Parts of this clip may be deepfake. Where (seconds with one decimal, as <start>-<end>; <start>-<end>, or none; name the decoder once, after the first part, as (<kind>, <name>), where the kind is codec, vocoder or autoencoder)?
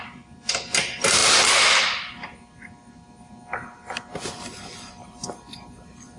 none